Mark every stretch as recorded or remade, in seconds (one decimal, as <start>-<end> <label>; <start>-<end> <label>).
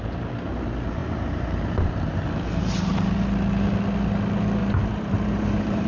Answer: 0.0-1.0 recorded; 1.0-2.2 remade; 2.2-4.6 recorded; 4.6-5.9 remade